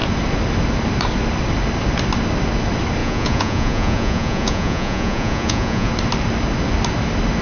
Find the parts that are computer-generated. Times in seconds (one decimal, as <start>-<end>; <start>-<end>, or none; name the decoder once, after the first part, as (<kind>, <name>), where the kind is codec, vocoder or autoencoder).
3.0-5.9 (vocoder, Vocos)